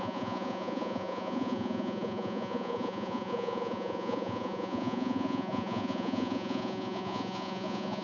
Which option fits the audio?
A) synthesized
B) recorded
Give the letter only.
A